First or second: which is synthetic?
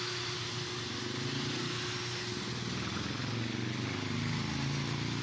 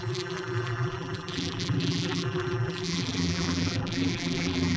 second